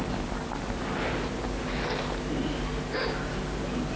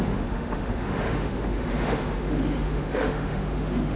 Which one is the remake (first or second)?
second